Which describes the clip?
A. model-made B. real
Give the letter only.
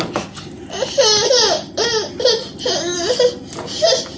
B